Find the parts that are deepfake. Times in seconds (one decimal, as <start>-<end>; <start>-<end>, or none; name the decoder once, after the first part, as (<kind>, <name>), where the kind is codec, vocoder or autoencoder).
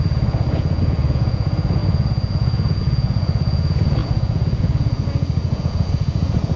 0.0-6.6 (vocoder, Vocos)